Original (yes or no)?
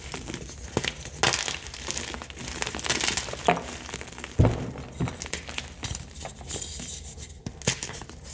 yes